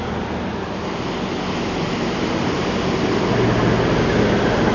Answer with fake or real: real